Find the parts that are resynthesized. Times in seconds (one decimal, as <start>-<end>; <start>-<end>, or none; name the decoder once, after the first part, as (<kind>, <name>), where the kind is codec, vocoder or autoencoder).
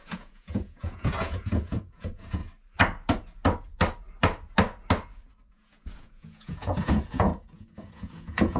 0.0-2.4 (vocoder, Vocos); 5.5-8.6